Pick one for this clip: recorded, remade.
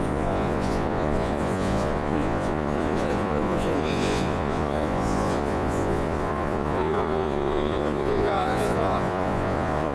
remade